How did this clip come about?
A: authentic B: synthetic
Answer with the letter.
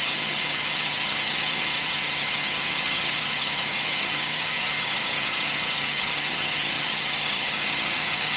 B